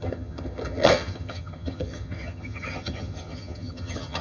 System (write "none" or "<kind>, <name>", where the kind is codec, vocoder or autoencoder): vocoder, HiFi-GAN